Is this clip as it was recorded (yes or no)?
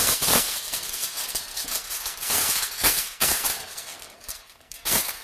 no